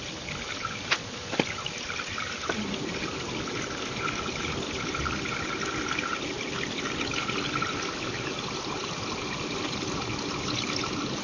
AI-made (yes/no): no